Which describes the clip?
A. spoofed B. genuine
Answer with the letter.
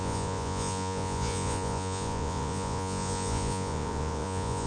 A